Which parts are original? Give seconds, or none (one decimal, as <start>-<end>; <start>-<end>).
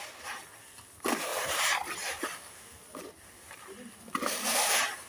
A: 0.0-1.3; 3.0-5.1